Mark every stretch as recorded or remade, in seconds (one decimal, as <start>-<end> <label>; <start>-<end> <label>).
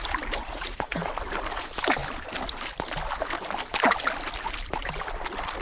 0.0-0.4 recorded; 0.4-1.1 remade; 1.1-5.6 recorded